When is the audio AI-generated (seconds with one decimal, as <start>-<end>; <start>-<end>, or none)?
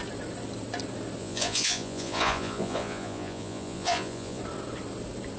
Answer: 1.2-4.4